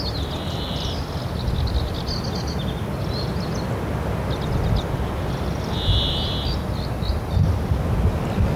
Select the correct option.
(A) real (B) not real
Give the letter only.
A